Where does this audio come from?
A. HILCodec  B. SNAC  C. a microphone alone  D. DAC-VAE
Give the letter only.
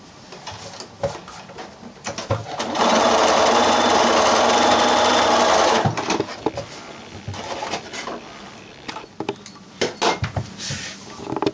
C